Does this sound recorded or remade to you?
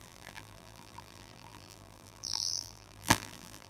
remade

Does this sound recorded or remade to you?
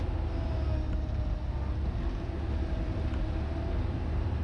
recorded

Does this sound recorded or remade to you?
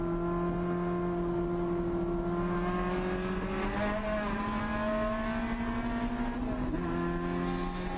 recorded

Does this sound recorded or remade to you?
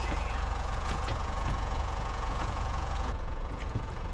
remade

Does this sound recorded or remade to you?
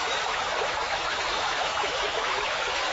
remade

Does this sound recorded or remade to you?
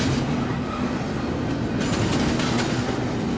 recorded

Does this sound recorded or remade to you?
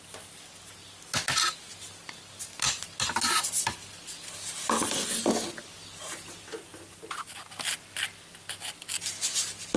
recorded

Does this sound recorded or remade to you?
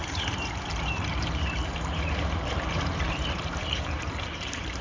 remade